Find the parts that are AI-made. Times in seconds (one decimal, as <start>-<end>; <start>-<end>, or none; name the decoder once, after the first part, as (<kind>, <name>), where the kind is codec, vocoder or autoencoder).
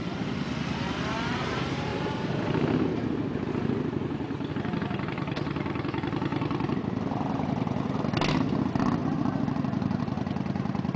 none